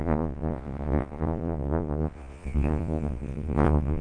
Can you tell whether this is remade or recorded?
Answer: remade